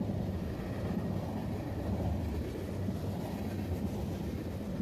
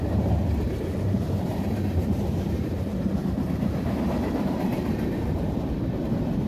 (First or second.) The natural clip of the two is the first